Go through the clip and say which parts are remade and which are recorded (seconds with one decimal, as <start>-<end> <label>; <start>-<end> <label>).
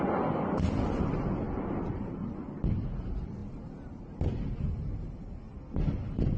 0.0-6.4 recorded